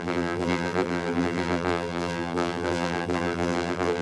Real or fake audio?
fake